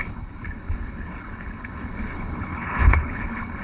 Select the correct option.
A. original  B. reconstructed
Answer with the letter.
B